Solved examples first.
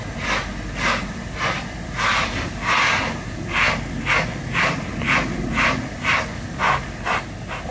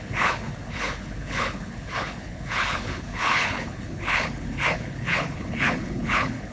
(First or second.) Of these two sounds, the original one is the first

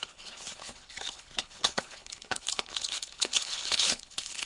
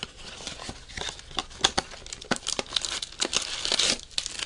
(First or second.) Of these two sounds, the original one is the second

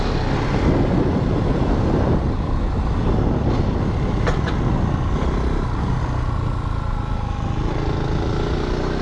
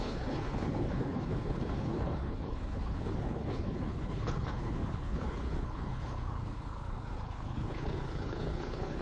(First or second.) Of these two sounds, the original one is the first